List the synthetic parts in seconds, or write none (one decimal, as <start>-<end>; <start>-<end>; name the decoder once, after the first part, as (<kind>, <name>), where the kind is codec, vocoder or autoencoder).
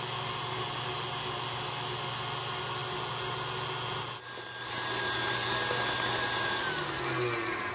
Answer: none